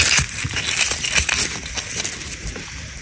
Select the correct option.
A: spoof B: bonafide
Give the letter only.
B